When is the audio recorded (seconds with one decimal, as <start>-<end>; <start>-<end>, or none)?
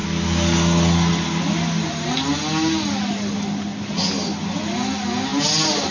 0.0-5.9